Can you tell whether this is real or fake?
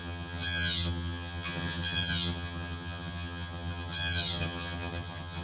fake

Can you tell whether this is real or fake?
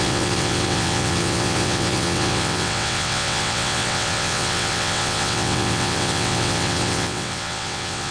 fake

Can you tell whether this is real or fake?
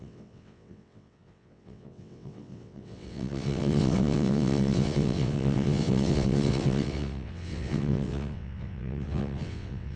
fake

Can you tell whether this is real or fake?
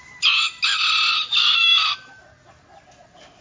real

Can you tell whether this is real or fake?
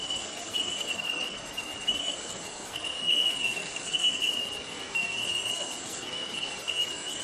fake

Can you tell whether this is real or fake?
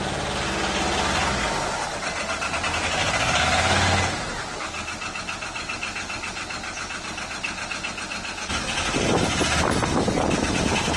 real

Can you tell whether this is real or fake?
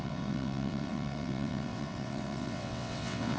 fake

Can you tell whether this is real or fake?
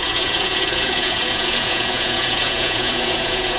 fake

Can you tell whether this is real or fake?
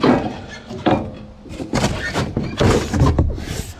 real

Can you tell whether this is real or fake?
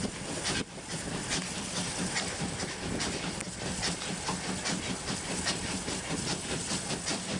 real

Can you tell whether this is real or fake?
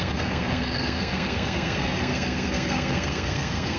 fake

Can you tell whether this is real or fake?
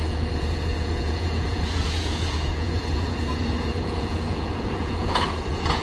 fake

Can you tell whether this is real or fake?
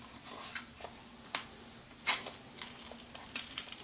real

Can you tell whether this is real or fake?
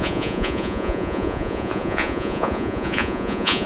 fake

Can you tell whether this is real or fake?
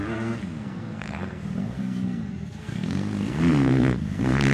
fake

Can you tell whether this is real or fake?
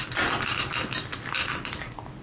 real